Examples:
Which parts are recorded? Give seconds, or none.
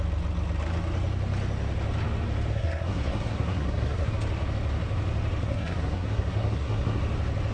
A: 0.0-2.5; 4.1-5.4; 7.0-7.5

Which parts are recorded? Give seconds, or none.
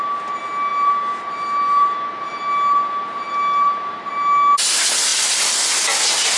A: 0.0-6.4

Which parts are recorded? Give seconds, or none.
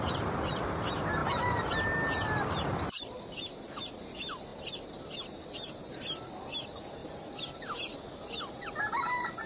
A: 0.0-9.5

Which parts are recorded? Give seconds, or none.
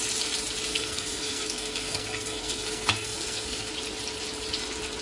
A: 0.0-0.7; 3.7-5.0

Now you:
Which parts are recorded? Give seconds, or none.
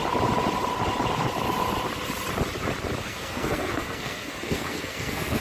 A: 0.0-3.0